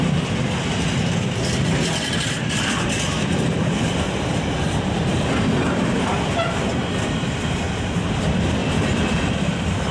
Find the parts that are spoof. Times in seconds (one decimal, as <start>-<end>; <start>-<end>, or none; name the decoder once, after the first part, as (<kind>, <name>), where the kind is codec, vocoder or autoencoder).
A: 8.6-9.9 (vocoder, BigVGAN v2)